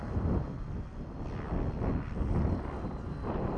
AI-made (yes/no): no